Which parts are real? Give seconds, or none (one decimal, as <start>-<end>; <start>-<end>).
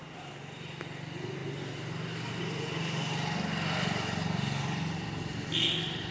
0.0-6.1